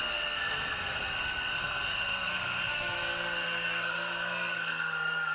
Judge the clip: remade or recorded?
remade